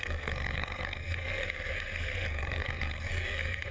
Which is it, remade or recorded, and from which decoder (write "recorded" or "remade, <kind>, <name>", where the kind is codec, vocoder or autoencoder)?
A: remade, codec, SNAC